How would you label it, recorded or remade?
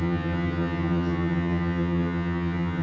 remade